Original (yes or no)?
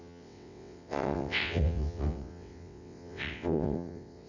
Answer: no